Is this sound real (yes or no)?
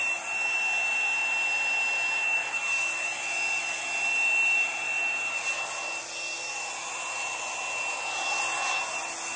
yes